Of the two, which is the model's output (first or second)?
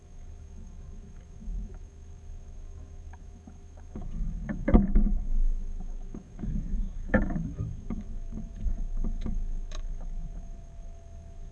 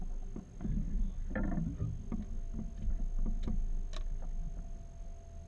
first